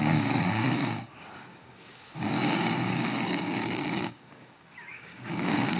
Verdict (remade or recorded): remade